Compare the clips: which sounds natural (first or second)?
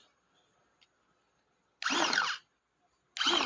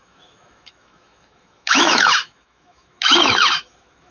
first